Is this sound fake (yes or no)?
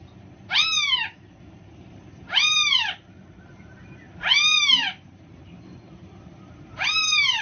yes